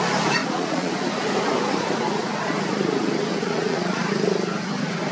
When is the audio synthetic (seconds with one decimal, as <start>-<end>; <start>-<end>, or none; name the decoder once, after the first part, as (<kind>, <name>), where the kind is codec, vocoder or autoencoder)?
0.4-0.9 (vocoder, Vocos); 3.4-4.1